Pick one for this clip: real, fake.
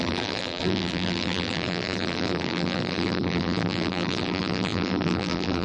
fake